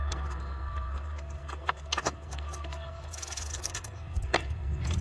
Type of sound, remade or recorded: remade